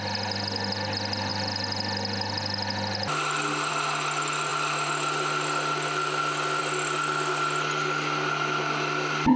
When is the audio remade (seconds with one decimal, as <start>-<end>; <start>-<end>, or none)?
none